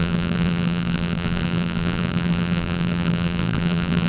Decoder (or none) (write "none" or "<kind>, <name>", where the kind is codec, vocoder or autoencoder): vocoder, BigVGAN v2